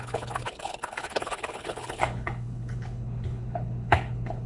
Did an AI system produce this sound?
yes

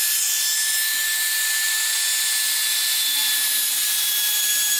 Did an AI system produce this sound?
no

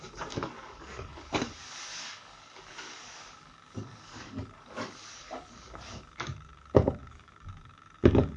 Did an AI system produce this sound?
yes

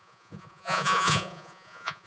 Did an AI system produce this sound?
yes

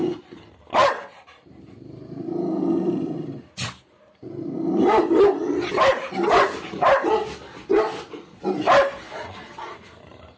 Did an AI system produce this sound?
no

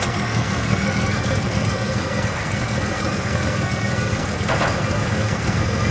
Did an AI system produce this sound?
yes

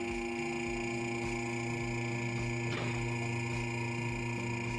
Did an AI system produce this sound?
no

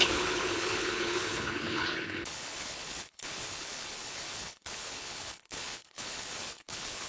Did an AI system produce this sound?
yes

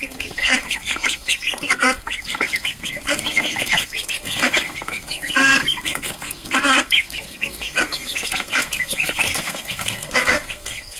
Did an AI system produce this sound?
yes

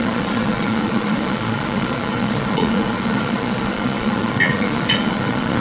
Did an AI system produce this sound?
yes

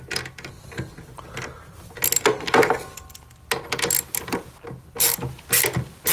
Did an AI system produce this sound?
no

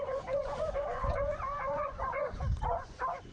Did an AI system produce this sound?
yes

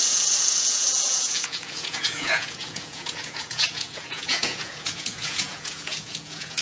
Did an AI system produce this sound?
yes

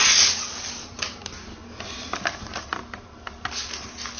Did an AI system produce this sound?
no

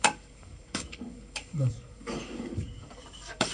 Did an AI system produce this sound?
yes